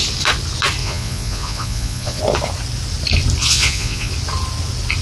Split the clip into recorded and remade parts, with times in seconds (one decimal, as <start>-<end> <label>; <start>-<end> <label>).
0.0-0.8 recorded; 0.8-2.2 remade; 2.2-3.4 recorded; 3.4-4.1 remade; 4.1-5.0 recorded